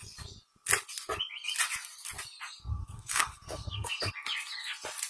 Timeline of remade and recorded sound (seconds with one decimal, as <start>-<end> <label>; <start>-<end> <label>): 0.0-2.7 recorded; 2.7-4.1 remade; 4.1-5.1 recorded